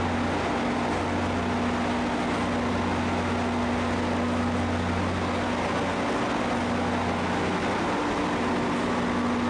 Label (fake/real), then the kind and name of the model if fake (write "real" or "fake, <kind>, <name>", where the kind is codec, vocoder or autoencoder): real